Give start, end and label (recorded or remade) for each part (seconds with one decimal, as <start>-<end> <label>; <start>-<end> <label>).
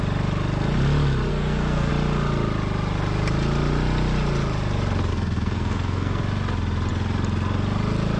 0.0-1.3 recorded; 1.3-1.9 remade; 1.9-5.1 recorded; 5.1-6.2 remade; 6.2-8.2 recorded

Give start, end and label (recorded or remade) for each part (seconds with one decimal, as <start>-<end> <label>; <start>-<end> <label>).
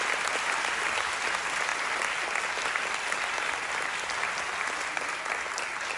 0.0-6.0 recorded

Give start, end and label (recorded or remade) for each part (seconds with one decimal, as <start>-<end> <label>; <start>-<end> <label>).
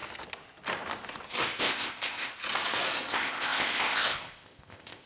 0.0-1.6 recorded; 1.6-2.3 remade; 2.3-3.1 recorded; 3.1-5.1 remade